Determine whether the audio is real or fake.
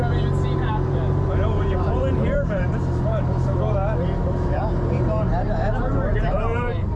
fake